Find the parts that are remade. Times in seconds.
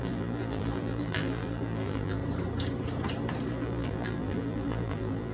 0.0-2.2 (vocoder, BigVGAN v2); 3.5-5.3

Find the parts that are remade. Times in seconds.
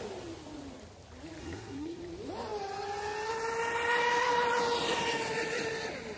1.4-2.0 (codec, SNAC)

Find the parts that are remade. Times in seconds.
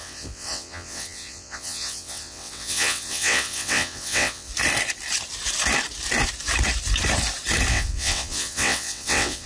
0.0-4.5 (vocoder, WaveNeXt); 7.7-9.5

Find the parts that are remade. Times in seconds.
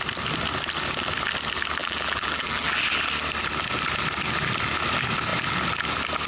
1.8-2.8 (vocoder, BigVGAN v2)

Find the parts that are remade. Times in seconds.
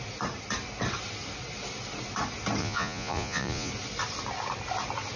2.6-3.7 (vocoder, Vocos)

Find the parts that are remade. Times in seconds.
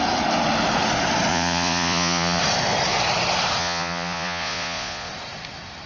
1.3-2.4 (vocoder, Vocos); 3.6-5.1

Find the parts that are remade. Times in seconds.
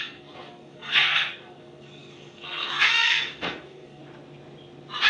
0.0-4.0 (codec, SNAC)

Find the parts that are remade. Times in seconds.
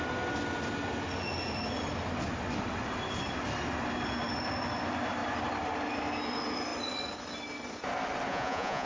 8.3-8.9 (vocoder, Vocos)